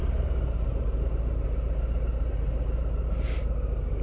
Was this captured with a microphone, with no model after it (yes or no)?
yes